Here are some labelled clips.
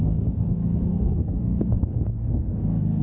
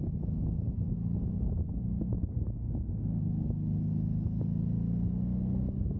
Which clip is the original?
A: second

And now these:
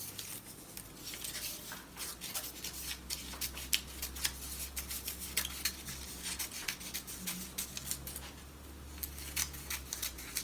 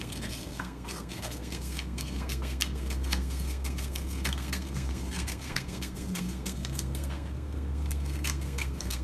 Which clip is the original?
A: first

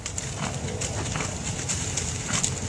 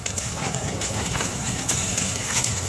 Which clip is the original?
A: first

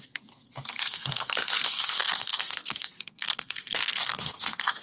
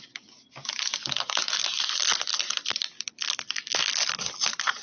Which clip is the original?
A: second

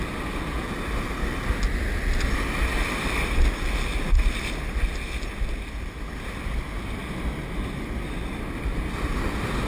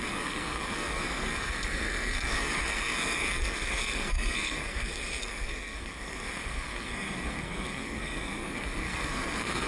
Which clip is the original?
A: first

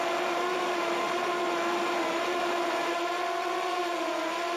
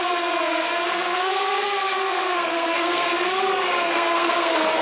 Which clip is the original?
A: first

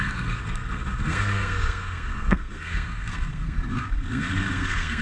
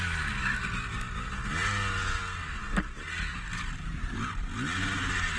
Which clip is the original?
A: second